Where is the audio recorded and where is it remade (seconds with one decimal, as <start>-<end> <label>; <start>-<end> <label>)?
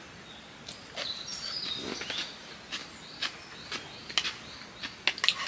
0.0-5.5 recorded